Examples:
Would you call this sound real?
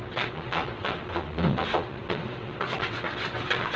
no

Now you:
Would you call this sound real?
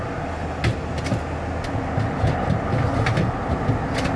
yes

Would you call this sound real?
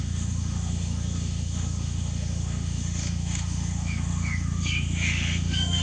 no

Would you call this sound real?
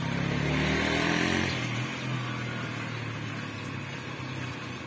yes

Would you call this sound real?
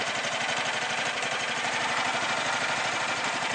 no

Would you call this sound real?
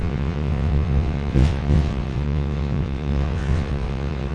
no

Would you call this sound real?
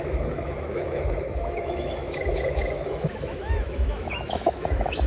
no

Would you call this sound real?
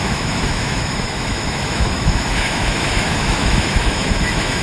no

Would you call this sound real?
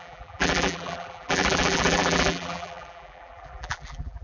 no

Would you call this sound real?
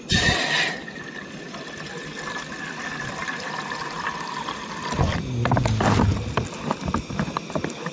yes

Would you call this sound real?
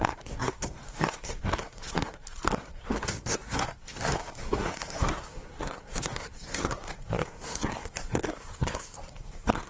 no